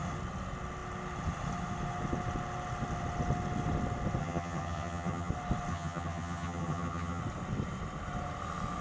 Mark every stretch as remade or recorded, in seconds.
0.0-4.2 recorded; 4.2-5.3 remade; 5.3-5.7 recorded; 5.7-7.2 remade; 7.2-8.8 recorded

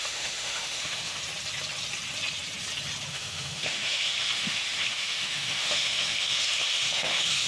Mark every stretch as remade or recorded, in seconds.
0.0-1.2 remade; 1.2-3.1 recorded; 3.1-7.5 remade

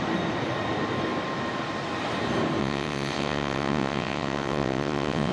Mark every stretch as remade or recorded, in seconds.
0.0-2.6 recorded; 2.6-5.3 remade

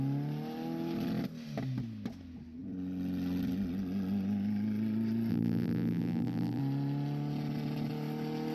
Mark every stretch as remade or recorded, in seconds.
0.0-5.3 recorded; 5.3-6.6 remade; 6.6-8.5 recorded

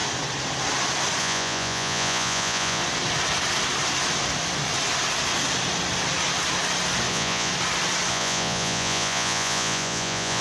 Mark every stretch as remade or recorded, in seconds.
0.0-1.2 recorded; 1.2-2.8 remade; 2.8-7.1 recorded; 7.1-7.5 remade; 7.5-8.1 recorded; 8.1-10.4 remade

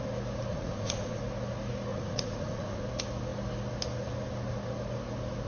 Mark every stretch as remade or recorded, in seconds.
0.0-0.5 recorded; 0.5-1.2 remade; 1.2-1.9 recorded; 1.9-2.8 remade; 2.8-5.5 recorded

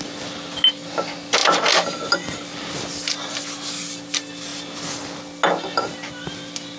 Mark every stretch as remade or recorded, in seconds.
0.0-6.8 recorded

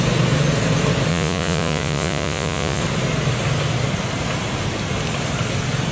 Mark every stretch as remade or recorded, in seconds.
0.0-1.1 recorded; 1.1-2.8 remade; 2.8-5.9 recorded